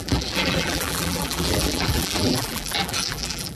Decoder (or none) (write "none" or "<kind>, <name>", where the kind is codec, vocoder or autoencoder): vocoder, BigVGAN v2